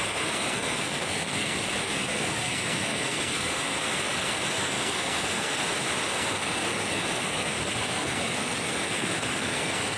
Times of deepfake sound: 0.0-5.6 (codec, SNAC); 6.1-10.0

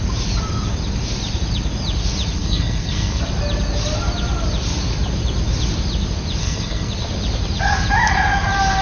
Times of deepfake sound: 2.4-3.2 (codec, SNAC); 6.4-6.9

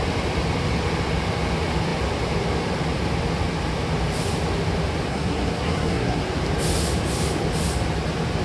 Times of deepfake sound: 5.1-6.2 (codec, SNAC)

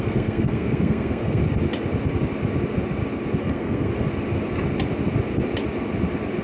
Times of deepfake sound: 0.0-1.4 (codec, SNAC); 3.4-3.9

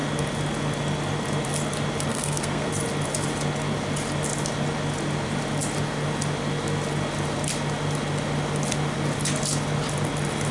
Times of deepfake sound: 2.1-2.7 (codec, SNAC)

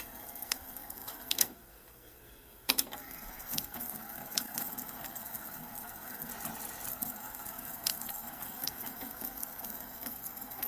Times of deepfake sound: 0.0-6.3 (codec, SNAC); 6.9-10.7

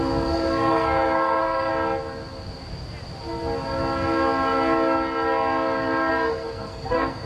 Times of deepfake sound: 0.0-1.7 (codec, SNAC); 6.1-7.3

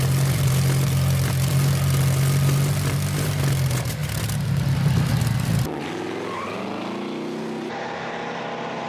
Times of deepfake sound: none